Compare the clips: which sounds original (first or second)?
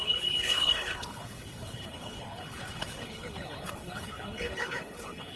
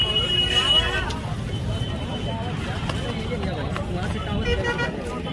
second